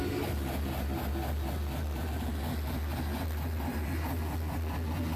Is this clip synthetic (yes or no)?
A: no